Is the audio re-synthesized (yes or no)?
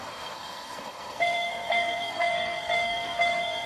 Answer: yes